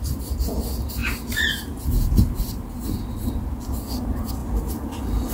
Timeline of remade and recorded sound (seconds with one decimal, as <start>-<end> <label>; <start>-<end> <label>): 0.0-1.0 recorded; 1.0-2.8 remade; 2.8-5.3 recorded